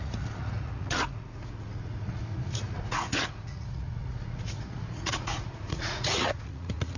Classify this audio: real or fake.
fake